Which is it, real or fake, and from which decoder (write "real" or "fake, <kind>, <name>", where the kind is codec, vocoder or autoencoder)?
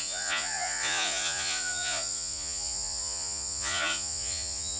fake, vocoder, Vocos